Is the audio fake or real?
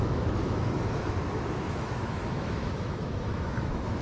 fake